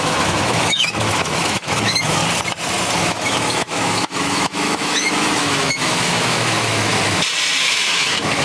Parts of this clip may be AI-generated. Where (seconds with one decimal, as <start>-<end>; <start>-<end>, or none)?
0.0-2.2; 3.0-6.9; 7.6-8.4

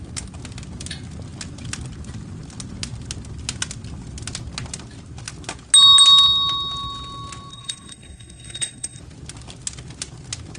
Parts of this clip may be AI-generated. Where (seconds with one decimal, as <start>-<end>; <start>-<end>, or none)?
7.5-9.0

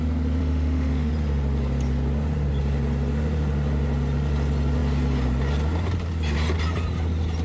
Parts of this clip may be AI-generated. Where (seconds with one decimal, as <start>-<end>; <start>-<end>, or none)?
0.4-1.1

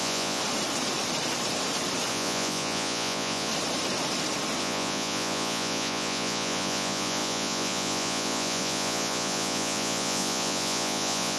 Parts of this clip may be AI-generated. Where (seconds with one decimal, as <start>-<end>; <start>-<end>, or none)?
0.0-0.4; 2.1-3.5; 4.6-11.4

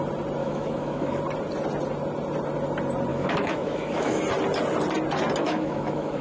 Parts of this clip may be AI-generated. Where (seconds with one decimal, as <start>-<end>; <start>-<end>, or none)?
0.4-1.2; 3.1-4.2; 5.4-6.2